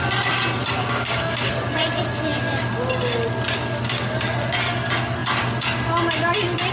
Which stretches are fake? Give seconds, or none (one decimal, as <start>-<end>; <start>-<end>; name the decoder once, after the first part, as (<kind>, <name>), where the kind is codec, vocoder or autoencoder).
0.8-1.5 (codec, DAC)